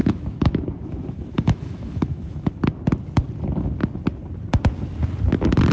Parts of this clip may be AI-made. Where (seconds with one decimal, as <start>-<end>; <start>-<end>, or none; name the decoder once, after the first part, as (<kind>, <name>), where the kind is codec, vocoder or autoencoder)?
0.0-2.5 (autoencoder, DAC-VAE)

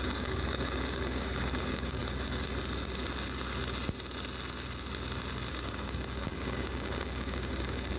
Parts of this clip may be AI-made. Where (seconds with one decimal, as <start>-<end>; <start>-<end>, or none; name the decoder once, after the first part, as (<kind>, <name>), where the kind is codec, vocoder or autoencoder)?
0.0-2.0 (codec, DAC); 5.5-8.0

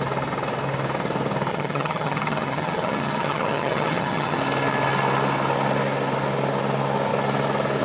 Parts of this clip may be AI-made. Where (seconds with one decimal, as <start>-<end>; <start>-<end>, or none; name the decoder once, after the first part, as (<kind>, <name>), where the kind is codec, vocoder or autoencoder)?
1.5-4.4 (vocoder, HiFi-GAN)

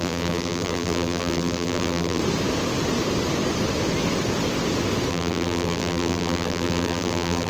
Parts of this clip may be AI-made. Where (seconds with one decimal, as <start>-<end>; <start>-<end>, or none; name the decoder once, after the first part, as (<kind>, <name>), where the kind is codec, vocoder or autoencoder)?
0.0-2.2 (vocoder, BigVGAN v2); 5.1-7.5

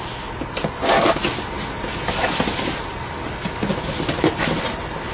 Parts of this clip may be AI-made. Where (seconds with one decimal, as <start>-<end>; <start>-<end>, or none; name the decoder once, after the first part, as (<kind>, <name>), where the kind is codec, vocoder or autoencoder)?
none

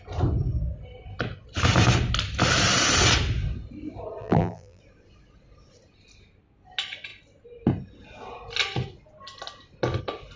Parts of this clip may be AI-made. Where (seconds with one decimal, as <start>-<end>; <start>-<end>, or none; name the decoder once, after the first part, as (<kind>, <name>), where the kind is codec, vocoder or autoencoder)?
4.2-4.8 (vocoder, BigVGAN v2)

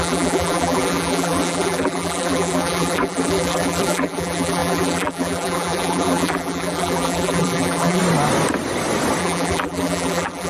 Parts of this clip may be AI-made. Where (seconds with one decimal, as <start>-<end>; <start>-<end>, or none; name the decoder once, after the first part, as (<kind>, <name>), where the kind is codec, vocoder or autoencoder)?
0.0-8.0 (vocoder, BigVGAN v2); 9.2-10.5